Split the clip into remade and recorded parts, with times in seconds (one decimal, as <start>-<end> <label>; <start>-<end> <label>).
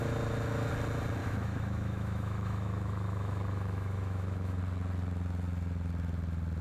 0.0-1.2 recorded; 1.2-4.6 remade; 4.6-6.6 recorded